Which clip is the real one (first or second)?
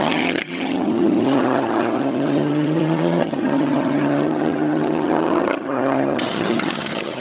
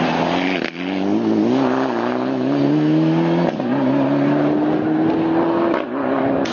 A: second